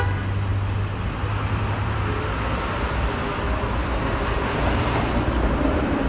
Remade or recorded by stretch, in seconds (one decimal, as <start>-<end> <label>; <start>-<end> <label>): 0.0-6.1 recorded